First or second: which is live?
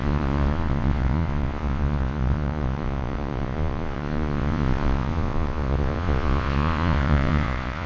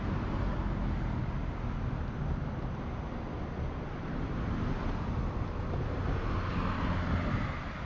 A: second